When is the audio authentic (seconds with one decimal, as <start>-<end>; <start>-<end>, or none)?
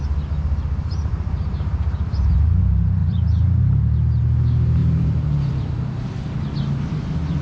0.0-1.1; 2.6-3.0; 3.6-4.8; 6.1-7.4